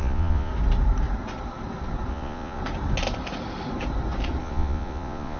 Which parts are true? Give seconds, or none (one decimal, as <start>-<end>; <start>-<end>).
0.5-2.1; 2.6-4.4